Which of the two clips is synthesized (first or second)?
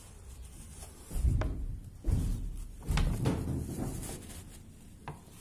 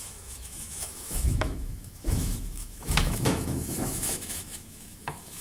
second